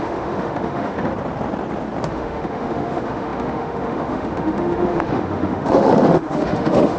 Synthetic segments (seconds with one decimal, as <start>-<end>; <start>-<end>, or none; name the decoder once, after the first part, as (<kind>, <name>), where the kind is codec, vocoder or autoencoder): 0.0-1.1 (autoencoder, DAC-VAE); 2.1-7.0

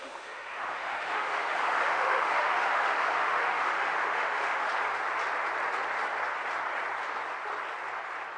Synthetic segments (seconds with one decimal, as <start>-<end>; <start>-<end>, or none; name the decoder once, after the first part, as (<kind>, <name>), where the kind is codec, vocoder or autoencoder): 0.0-4.7 (autoencoder, DAC-VAE)

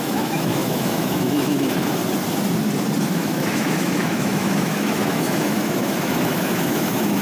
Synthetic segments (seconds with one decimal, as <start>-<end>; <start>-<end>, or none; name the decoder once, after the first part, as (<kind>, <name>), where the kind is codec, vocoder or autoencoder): 0.0-2.0 (autoencoder, DAC-VAE); 3.0-7.2

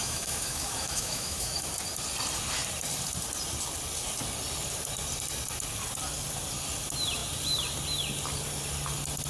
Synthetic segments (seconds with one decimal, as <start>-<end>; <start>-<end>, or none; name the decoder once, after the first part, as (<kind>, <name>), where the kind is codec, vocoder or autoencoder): 0.0-1.7 (autoencoder, DAC-VAE)

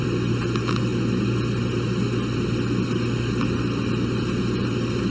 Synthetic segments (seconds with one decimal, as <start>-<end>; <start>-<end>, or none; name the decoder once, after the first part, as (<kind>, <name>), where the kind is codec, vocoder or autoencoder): none

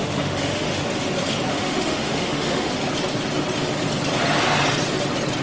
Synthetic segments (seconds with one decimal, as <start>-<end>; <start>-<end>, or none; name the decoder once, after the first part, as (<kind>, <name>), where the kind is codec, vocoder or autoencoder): 0.0-0.8 (autoencoder, DAC-VAE); 1.5-2.7

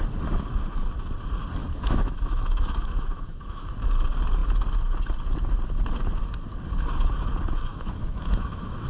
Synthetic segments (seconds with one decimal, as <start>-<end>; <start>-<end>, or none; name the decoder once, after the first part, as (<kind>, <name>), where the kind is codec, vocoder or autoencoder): 1.6-3.7 (autoencoder, DAC-VAE); 7.7-8.9

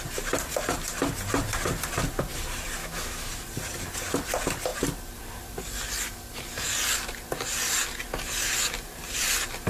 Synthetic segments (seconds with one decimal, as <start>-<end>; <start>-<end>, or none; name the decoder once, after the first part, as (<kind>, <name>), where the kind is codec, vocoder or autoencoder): 2.8-3.3 (autoencoder, DAC-VAE)